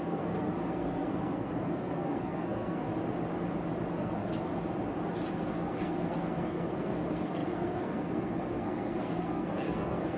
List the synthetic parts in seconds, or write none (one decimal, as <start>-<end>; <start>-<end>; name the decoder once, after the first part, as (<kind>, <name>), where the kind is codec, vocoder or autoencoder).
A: 0.0-2.9 (codec, SNAC); 3.9-4.5; 5.3-10.2